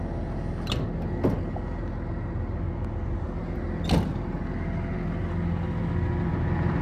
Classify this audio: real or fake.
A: real